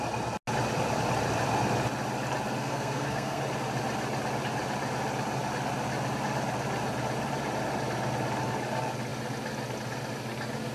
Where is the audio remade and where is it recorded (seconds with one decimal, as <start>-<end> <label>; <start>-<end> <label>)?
0.0-2.6 recorded; 2.6-3.4 remade; 3.4-10.7 recorded